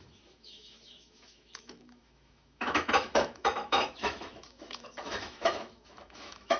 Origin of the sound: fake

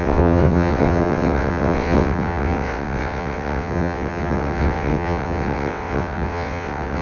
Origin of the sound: fake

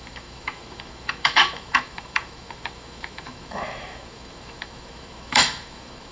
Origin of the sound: fake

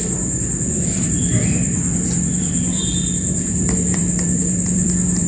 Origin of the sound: fake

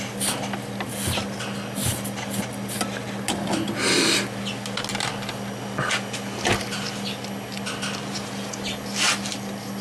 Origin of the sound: real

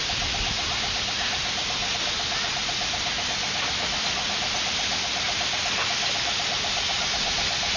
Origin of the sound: real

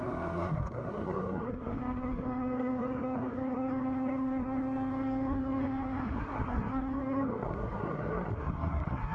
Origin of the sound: fake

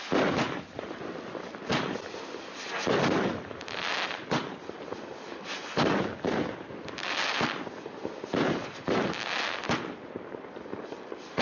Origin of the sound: real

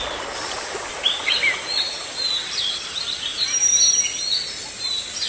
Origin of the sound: real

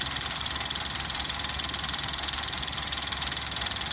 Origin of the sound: real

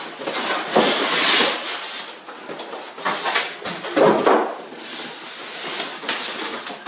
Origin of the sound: real